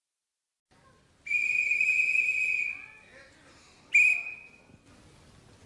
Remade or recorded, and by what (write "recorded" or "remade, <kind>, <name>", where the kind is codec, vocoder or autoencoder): recorded